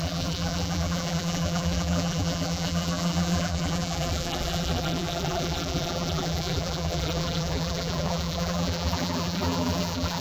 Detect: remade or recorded remade